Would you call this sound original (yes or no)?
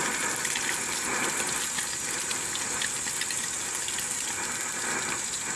yes